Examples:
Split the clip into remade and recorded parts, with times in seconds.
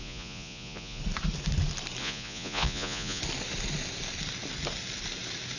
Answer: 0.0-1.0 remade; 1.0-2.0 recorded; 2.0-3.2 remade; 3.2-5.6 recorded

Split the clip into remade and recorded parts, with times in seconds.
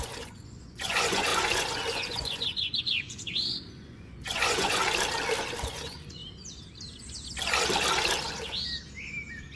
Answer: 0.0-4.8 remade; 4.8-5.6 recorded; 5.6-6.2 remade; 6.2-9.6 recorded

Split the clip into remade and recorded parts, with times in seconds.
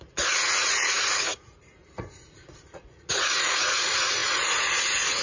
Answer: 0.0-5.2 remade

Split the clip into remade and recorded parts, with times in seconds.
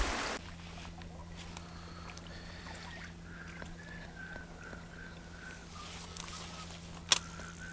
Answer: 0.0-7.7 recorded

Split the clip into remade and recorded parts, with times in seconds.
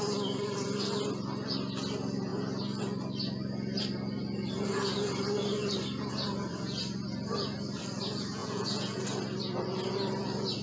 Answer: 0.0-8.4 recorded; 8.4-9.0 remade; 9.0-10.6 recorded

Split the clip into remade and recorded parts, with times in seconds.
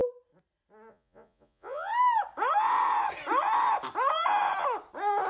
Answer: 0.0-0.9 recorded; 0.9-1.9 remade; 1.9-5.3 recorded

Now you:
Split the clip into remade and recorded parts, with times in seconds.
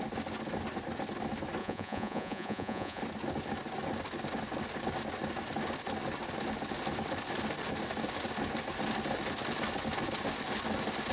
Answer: 0.0-1.6 recorded; 1.6-3.0 remade; 3.0-11.1 recorded